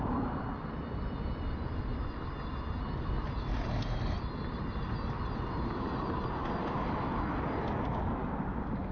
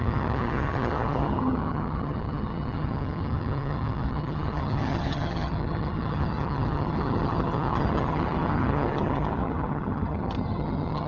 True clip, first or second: first